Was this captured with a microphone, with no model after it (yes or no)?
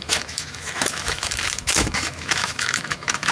no